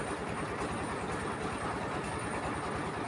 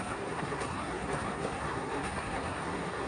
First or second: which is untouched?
first